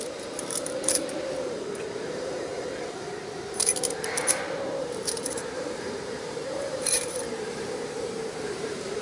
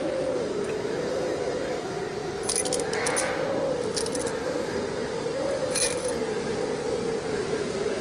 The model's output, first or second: first